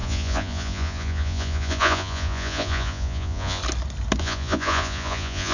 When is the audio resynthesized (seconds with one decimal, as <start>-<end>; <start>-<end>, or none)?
0.0-3.6; 4.2-5.5